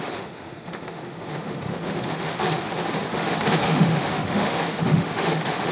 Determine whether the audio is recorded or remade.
remade